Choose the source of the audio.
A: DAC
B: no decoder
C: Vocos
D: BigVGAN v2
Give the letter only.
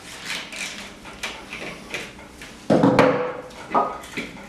B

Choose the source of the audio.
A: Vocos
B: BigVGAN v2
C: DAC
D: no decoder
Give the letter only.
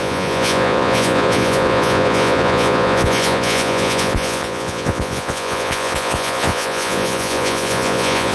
A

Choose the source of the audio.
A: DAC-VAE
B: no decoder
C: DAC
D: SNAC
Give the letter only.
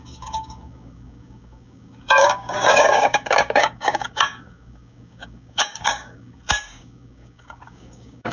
C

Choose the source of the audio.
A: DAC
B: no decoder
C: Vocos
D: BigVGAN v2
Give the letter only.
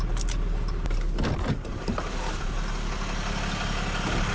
B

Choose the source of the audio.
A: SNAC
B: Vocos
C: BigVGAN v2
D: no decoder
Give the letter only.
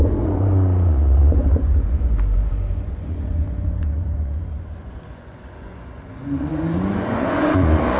B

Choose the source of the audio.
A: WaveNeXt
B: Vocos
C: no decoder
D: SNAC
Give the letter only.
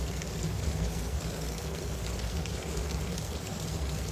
D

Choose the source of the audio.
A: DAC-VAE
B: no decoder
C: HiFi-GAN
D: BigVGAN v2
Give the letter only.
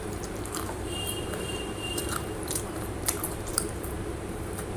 D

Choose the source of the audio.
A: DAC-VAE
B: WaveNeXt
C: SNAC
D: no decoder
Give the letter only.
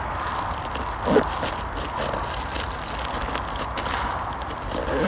D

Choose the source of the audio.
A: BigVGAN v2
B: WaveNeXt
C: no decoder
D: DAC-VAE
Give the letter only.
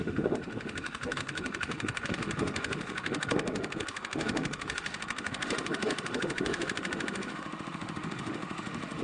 D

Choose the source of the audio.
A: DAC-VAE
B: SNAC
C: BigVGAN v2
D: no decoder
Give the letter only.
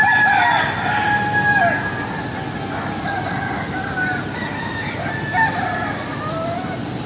D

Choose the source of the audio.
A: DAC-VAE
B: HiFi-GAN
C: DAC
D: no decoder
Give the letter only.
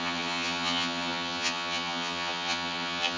B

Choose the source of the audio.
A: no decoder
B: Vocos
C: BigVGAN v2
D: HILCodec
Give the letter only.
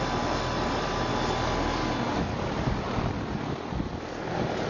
A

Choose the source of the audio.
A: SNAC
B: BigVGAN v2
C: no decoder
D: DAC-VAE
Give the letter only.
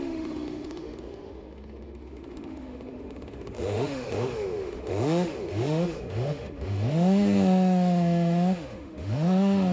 D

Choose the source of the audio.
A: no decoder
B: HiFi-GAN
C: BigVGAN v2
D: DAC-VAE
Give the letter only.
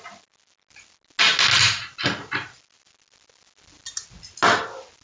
A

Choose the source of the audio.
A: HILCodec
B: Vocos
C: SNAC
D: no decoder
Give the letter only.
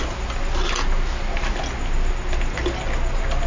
D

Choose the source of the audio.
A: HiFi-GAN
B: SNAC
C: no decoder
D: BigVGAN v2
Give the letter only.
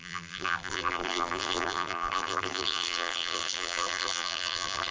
D